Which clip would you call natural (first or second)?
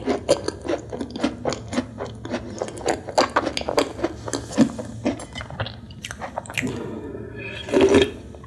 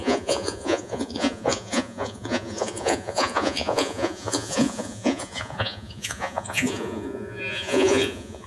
first